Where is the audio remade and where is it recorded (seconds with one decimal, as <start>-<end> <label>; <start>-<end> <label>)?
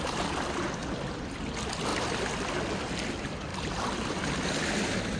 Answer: 0.0-0.8 recorded; 0.8-1.5 remade; 1.5-3.5 recorded; 3.5-4.2 remade; 4.2-5.2 recorded